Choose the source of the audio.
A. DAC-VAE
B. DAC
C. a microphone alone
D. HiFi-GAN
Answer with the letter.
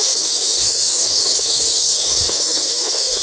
B